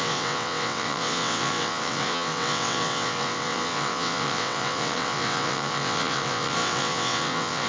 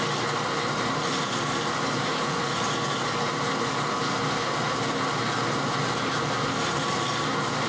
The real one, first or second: second